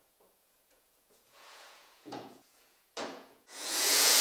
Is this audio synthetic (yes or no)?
yes